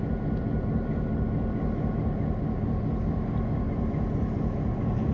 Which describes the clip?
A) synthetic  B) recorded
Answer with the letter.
B